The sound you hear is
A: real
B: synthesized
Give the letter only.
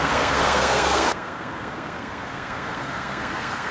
B